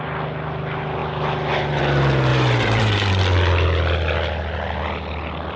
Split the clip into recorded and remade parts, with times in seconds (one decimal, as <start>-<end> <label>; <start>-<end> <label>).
0.0-2.3 recorded; 2.3-3.1 remade; 3.1-5.6 recorded